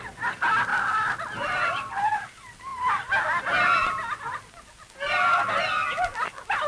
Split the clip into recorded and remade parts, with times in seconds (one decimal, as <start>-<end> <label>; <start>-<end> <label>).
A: 0.0-0.7 recorded; 0.7-2.1 remade; 2.1-6.7 recorded